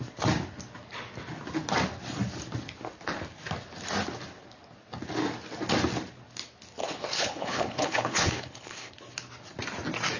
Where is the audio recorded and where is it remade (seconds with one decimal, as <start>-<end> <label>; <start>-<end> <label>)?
0.0-6.8 recorded; 6.8-8.9 remade; 8.9-10.2 recorded